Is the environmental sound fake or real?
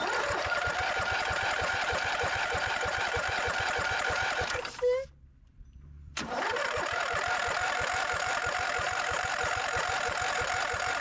fake